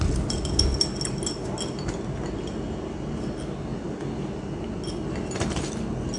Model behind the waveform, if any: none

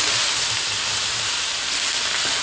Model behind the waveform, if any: none